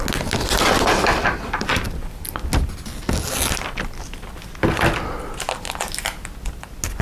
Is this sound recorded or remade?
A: recorded